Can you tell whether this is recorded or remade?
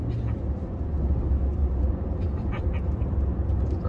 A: recorded